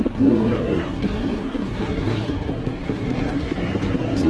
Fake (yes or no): yes